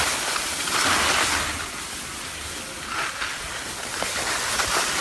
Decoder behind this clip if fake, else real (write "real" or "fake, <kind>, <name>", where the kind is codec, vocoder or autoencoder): real